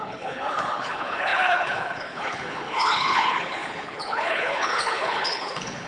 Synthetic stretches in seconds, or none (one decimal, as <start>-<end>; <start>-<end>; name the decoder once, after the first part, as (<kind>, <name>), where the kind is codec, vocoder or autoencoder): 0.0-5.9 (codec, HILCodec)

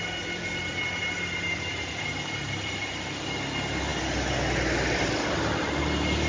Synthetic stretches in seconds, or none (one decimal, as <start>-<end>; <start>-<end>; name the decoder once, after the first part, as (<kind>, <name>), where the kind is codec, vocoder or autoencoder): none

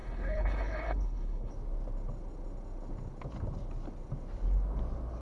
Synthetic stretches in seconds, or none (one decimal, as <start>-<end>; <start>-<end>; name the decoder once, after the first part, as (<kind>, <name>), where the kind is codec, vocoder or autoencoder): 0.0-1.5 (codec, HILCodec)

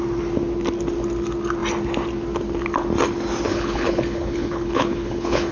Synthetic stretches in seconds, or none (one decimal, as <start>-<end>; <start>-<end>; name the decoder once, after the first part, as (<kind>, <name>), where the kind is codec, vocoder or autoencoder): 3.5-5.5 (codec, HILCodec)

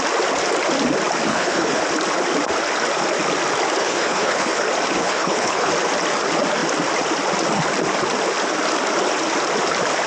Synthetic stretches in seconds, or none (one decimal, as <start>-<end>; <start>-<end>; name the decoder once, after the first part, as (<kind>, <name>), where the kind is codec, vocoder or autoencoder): 1.3-1.8 (codec, HILCodec); 3.8-4.6; 5.0-5.7

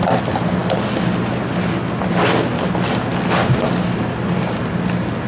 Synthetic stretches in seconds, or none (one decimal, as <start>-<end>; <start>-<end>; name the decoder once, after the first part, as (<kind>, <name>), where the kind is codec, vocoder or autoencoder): none

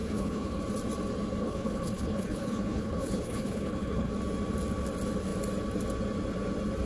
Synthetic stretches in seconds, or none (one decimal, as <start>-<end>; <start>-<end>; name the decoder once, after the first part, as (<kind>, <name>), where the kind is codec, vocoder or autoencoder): 0.0-0.6 (codec, HILCodec); 1.4-4.1

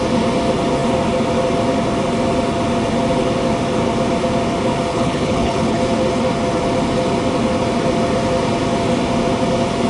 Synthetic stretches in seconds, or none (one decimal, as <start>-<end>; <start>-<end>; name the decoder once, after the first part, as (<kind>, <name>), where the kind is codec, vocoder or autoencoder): 4.9-5.8 (codec, HILCodec)